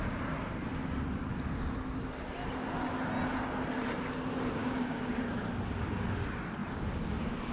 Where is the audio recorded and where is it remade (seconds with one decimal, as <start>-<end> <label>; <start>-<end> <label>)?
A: 0.0-4.6 recorded; 4.6-5.2 remade; 5.2-7.5 recorded